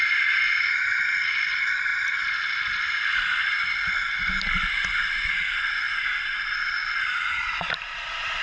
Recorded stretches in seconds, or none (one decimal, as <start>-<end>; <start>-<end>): 0.0-8.4